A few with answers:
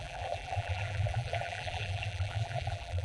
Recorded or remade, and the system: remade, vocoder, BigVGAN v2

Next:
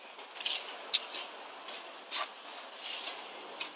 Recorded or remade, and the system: recorded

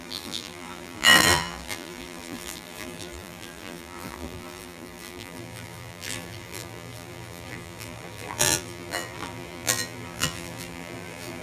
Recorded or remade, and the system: remade, vocoder, BigVGAN v2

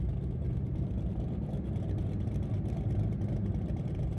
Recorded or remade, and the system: remade, vocoder, BigVGAN v2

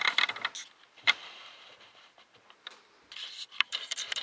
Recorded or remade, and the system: remade, vocoder, BigVGAN v2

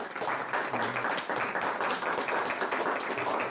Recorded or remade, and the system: recorded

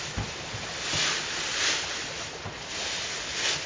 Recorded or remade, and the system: recorded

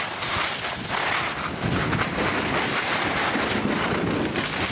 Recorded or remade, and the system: recorded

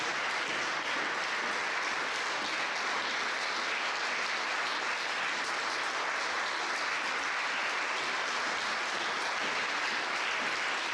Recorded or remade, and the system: remade, vocoder, BigVGAN v2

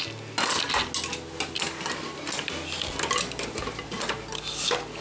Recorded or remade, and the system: recorded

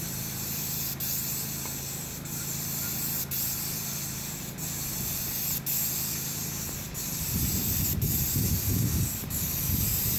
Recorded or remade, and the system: recorded